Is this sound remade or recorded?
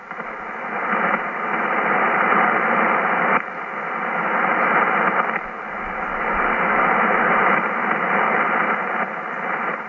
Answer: recorded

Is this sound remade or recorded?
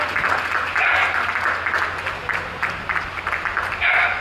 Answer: recorded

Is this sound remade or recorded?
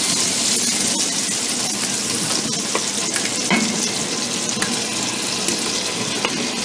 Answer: recorded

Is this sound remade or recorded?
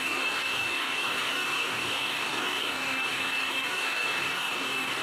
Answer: remade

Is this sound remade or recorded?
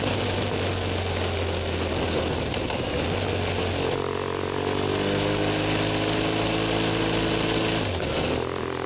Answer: recorded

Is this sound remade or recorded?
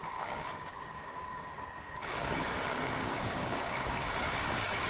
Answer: remade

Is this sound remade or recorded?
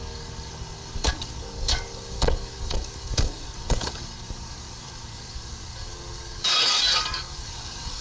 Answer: remade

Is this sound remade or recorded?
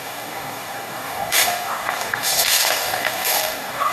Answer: remade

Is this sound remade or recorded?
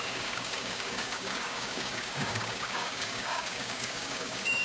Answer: remade